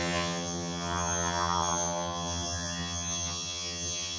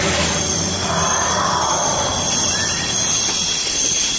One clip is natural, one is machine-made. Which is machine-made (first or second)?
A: first